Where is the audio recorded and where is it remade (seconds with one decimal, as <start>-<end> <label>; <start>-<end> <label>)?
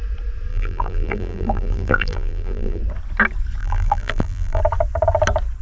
0.0-0.5 recorded; 0.5-2.8 remade; 2.8-3.6 recorded; 3.6-4.6 remade; 4.6-5.6 recorded